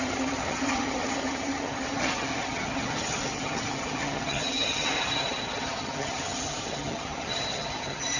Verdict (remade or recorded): remade